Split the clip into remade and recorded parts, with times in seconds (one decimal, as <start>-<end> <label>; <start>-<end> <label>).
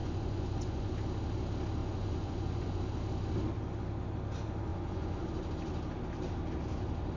0.0-0.9 remade; 0.9-1.8 recorded; 1.8-2.8 remade; 2.8-4.7 recorded; 4.7-5.2 remade; 5.2-7.2 recorded